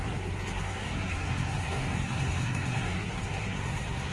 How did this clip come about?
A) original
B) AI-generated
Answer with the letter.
B